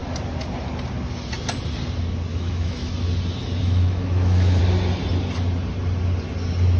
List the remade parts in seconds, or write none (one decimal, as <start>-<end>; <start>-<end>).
2.3-2.9; 3.6-4.6